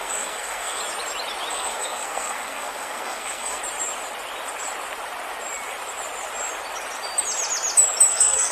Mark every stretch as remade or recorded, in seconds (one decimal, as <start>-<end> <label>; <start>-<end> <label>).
0.0-0.8 remade; 0.8-1.5 recorded; 1.5-3.6 remade; 3.6-8.1 recorded; 8.1-8.5 remade